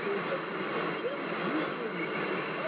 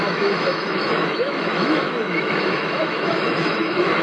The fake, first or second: second